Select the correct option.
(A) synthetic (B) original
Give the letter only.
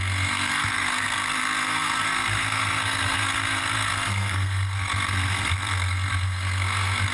A